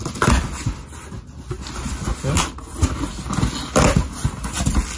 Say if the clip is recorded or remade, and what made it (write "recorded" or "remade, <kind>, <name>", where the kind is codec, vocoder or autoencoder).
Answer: recorded